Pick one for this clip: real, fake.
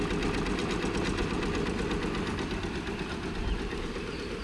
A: real